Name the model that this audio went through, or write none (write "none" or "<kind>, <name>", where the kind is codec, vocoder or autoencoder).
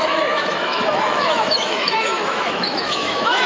autoencoder, DAC-VAE